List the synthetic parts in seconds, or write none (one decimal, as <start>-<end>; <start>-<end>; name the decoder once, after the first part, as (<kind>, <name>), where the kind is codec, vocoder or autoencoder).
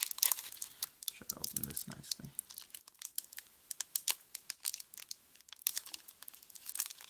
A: 0.0-1.8 (autoencoder, DAC-VAE); 2.7-7.1